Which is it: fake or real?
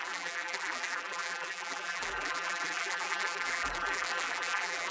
fake